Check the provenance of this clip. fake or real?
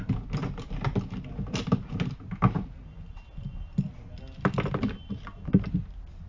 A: real